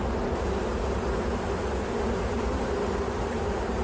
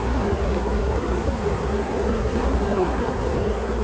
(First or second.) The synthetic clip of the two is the second